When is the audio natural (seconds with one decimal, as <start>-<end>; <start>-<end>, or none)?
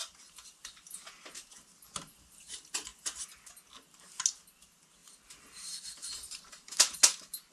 1.1-7.5